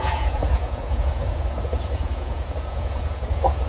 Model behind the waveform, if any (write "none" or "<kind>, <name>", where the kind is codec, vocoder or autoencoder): vocoder, Vocos